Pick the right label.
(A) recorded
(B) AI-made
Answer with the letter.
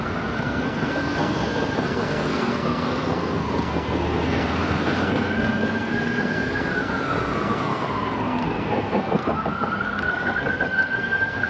B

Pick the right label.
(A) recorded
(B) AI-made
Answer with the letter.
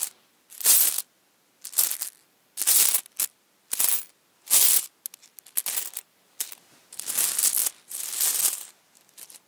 A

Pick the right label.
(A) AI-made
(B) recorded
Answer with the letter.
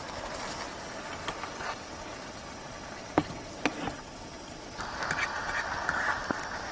B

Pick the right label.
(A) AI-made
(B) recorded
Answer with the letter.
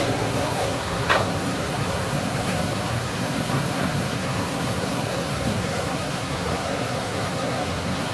A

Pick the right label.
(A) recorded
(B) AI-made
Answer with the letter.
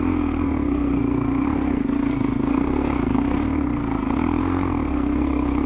B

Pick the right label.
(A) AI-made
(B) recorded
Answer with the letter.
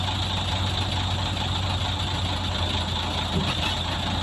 B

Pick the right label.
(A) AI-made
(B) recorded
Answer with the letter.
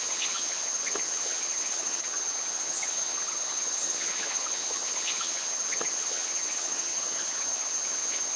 A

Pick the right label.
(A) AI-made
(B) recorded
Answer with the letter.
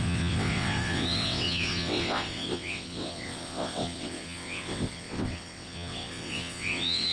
A